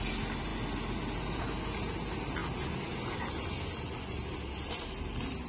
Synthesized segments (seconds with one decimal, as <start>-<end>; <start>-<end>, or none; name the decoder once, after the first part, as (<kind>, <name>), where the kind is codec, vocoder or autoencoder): none